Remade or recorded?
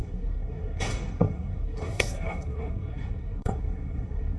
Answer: remade